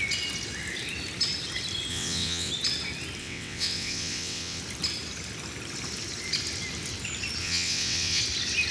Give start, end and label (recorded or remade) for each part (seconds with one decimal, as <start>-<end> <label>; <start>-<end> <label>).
0.0-1.9 recorded; 1.9-2.5 remade; 2.5-3.2 recorded; 3.2-4.6 remade; 4.6-7.4 recorded; 7.4-8.2 remade; 8.2-8.7 recorded